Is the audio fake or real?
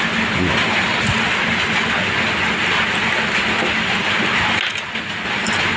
real